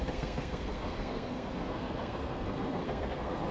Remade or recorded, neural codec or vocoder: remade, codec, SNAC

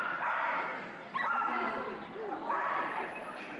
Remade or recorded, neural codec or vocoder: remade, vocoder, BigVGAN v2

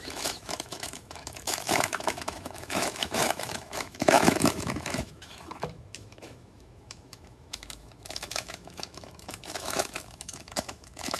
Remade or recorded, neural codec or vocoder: remade, autoencoder, DAC-VAE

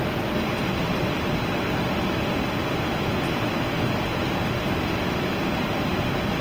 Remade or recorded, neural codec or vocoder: recorded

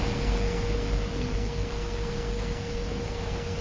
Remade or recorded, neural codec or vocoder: remade, codec, SNAC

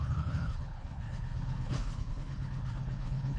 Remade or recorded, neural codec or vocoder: remade, codec, HILCodec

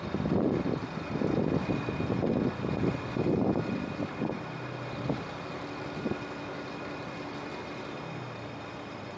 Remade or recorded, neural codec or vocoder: recorded